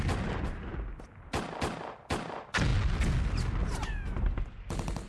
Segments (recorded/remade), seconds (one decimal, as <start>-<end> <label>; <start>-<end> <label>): 0.0-5.1 recorded

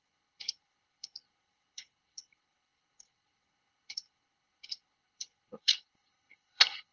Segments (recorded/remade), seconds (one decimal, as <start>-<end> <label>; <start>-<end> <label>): 0.0-6.9 remade

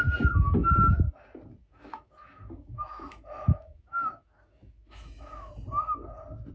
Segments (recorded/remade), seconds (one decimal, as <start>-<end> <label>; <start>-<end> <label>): 0.0-0.6 recorded; 0.6-1.1 remade; 1.1-1.6 recorded; 1.6-5.5 remade; 5.5-6.5 recorded

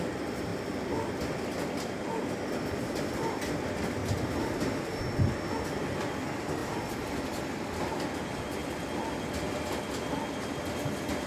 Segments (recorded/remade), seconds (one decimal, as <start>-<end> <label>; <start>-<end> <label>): 0.0-0.5 recorded; 0.5-3.1 remade; 3.1-4.0 recorded; 4.0-4.9 remade; 4.9-6.6 recorded; 6.6-7.4 remade; 7.4-8.6 recorded; 8.6-9.2 remade; 9.2-11.3 recorded

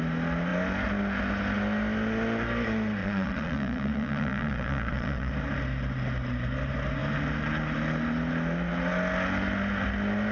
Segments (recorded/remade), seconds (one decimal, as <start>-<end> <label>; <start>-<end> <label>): 0.0-3.0 recorded; 3.0-5.3 remade; 5.3-10.3 recorded